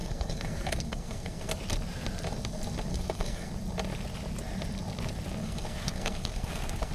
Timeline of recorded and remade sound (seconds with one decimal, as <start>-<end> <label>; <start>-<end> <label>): 0.0-1.5 remade; 1.5-2.9 recorded; 2.9-3.5 remade; 3.5-5.4 recorded; 5.4-6.9 remade